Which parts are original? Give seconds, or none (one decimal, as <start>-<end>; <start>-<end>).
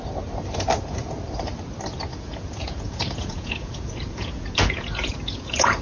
0.0-2.1